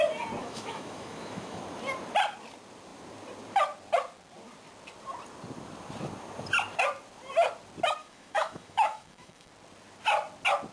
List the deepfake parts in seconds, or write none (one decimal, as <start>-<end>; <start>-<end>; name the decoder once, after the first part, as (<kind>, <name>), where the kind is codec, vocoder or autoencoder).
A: 0.4-1.6 (autoencoder, DAC-VAE); 8.0-9.5